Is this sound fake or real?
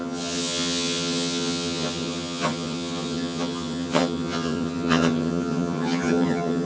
fake